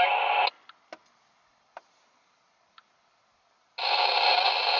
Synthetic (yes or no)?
no